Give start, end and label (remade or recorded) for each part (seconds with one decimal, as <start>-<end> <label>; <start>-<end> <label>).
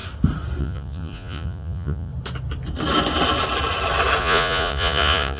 0.0-0.6 recorded; 0.6-2.1 remade; 2.1-4.2 recorded; 4.2-5.4 remade